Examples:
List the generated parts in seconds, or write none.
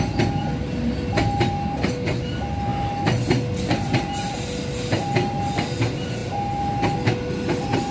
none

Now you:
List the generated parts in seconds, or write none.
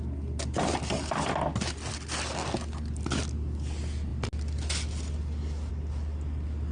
none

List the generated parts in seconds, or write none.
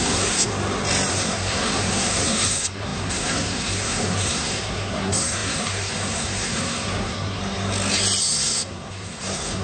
0.0-0.5 (codec, SNAC); 1.1-7.4; 8.2-9.6